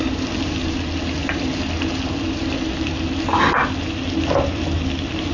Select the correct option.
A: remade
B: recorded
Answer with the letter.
B